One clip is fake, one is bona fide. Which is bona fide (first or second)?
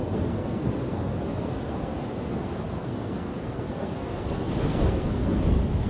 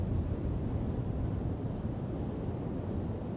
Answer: second